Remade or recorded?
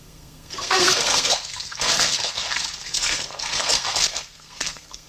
remade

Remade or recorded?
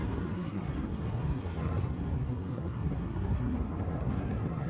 remade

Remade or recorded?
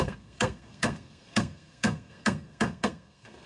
remade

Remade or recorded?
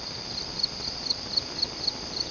recorded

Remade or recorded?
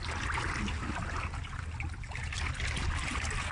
recorded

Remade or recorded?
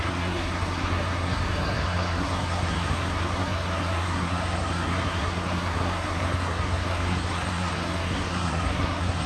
remade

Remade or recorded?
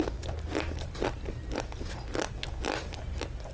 recorded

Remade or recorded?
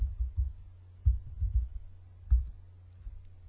recorded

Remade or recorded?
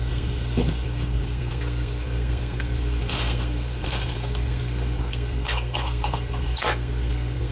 remade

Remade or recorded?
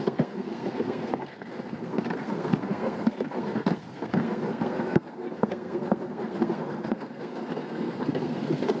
remade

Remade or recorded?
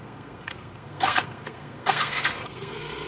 remade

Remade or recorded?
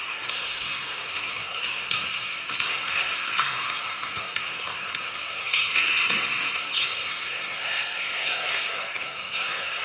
remade